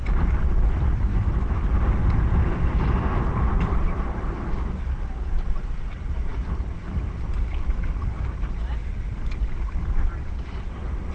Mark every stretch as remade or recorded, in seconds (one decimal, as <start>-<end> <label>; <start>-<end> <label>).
0.0-1.1 recorded; 1.1-1.6 remade; 1.6-11.1 recorded